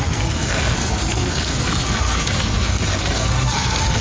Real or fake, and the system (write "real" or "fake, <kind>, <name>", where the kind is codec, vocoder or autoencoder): fake, codec, SNAC